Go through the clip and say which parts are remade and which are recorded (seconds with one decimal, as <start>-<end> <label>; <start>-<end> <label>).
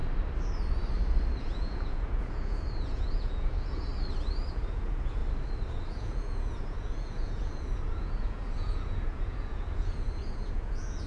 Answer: 0.0-1.4 recorded; 1.4-3.9 remade; 3.9-4.5 recorded; 4.5-5.2 remade; 5.2-5.9 recorded; 5.9-11.1 remade